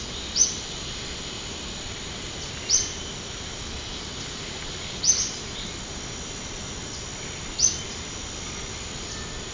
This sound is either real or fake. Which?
real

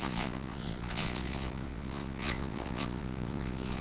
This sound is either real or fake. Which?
fake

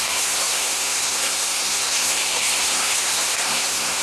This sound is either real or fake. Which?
fake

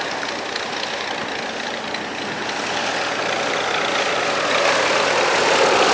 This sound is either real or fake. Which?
real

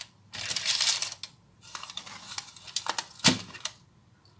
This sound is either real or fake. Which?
real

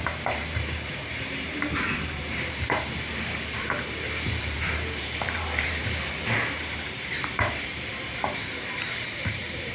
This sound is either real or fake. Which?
fake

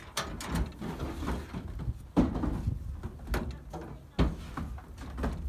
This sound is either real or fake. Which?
real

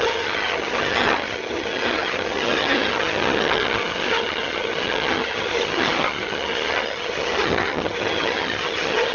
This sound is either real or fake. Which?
fake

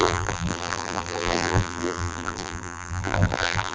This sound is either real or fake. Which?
fake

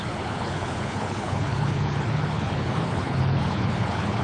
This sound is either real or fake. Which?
fake